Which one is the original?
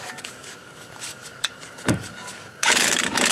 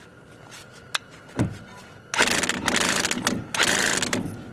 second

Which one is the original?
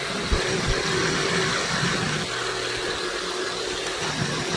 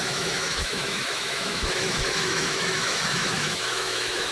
first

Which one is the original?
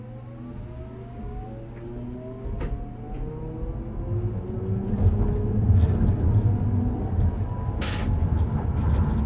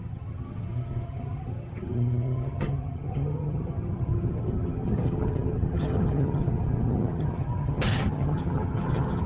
first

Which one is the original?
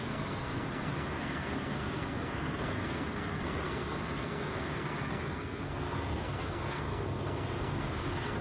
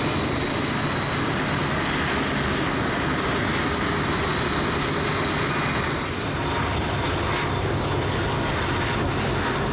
second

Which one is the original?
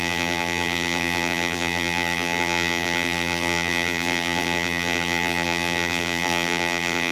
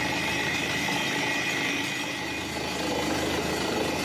second